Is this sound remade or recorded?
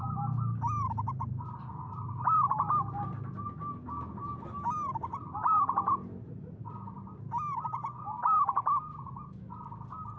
recorded